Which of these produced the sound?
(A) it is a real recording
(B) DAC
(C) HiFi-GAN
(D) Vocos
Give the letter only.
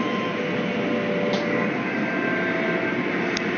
A